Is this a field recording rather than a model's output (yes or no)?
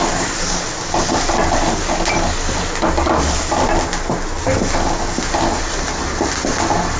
yes